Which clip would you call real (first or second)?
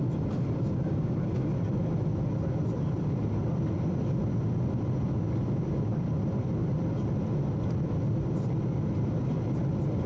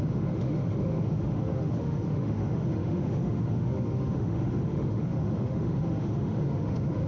first